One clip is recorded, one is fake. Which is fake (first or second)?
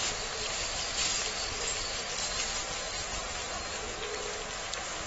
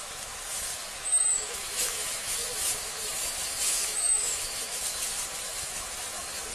second